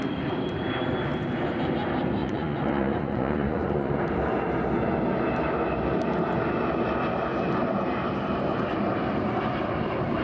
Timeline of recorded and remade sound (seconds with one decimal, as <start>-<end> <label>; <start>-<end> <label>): 0.0-2.2 recorded; 2.2-4.0 remade; 4.0-10.2 recorded